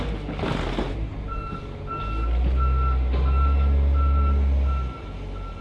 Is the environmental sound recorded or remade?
recorded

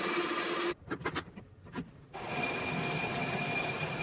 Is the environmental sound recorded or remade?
recorded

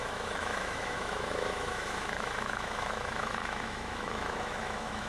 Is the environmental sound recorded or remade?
remade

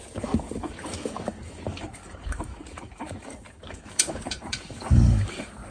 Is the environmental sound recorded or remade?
remade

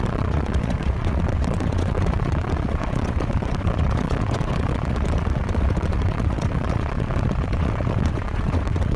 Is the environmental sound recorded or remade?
remade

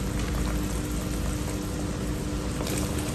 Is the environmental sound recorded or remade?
recorded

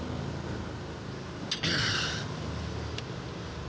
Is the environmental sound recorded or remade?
recorded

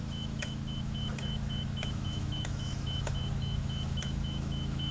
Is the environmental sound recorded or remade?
remade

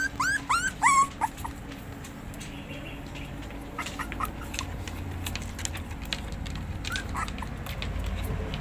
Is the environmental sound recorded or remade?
recorded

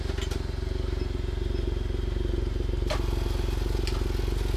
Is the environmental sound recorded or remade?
recorded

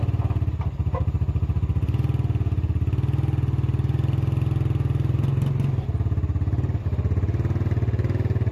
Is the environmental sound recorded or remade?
recorded